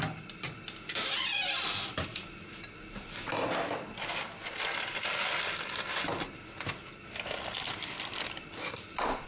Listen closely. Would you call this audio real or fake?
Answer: real